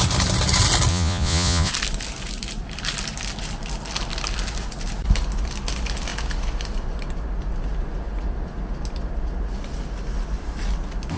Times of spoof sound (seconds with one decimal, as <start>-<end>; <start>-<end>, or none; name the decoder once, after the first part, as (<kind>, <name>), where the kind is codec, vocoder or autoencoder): 0.9-1.7 (vocoder, Vocos)